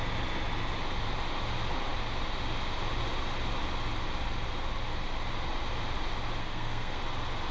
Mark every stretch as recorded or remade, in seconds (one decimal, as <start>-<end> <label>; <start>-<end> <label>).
0.0-6.4 recorded; 6.4-7.0 remade; 7.0-7.5 recorded